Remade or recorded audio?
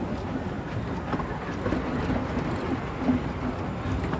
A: recorded